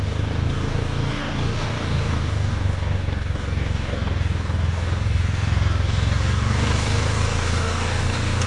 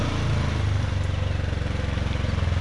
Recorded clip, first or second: second